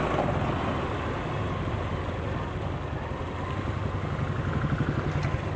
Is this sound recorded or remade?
recorded